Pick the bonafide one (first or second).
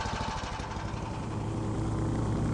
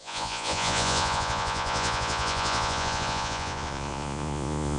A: first